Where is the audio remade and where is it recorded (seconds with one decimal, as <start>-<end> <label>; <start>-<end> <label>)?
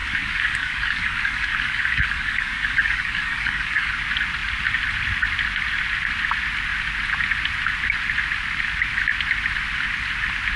0.0-3.9 remade; 3.9-10.6 recorded